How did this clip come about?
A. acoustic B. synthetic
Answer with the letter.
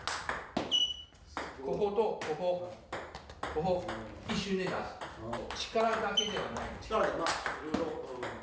A